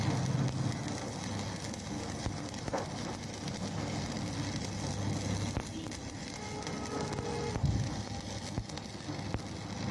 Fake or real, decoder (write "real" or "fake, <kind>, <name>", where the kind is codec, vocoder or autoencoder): real